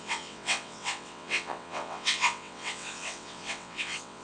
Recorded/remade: remade